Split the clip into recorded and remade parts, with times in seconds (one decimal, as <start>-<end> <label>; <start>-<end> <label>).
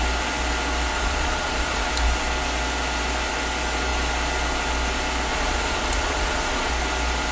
0.0-0.9 recorded; 0.9-1.9 remade; 1.9-5.3 recorded; 5.3-6.7 remade; 6.7-7.3 recorded